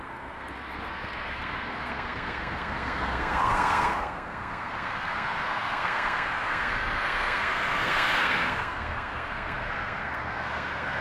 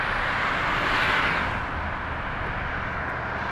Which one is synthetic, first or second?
first